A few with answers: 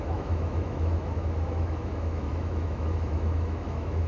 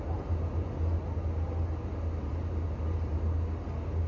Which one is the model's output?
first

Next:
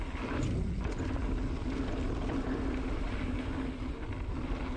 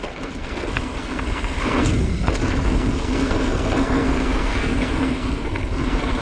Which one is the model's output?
second